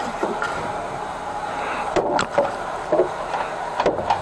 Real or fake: fake